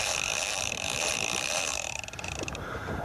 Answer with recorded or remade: remade